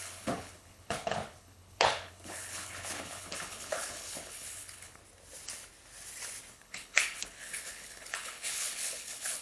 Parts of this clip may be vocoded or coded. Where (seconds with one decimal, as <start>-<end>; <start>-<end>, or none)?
0.0-5.0; 6.5-9.4